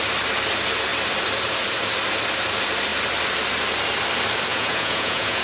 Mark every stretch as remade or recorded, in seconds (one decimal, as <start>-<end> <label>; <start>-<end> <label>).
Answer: 0.0-4.5 recorded; 4.5-5.4 remade